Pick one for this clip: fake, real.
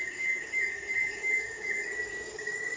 fake